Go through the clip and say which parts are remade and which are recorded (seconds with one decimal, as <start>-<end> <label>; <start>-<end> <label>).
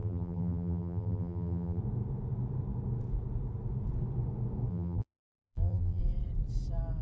0.0-1.8 remade; 1.8-4.7 recorded; 4.7-6.0 remade; 6.0-7.0 recorded